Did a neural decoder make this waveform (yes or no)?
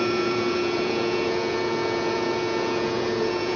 yes